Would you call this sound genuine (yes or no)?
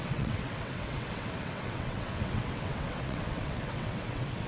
no